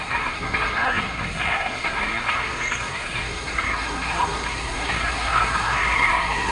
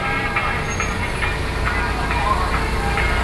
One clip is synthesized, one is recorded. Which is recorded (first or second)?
second